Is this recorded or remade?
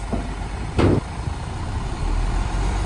remade